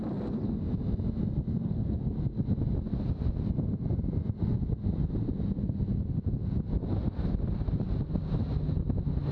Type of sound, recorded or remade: recorded